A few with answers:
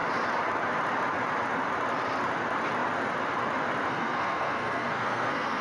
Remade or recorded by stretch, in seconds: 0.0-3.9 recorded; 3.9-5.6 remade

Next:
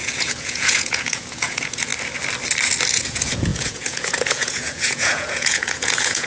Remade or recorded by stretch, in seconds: 0.0-1.9 remade; 1.9-2.9 recorded; 2.9-6.3 remade

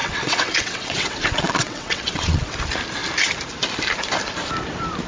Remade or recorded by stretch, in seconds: 0.0-2.6 remade; 2.6-5.1 recorded